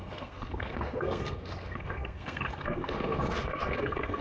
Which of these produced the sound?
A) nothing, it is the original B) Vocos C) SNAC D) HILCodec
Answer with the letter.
C